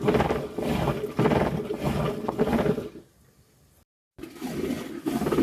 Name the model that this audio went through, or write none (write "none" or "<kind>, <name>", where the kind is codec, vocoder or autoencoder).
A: none